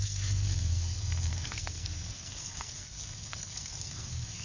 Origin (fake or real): fake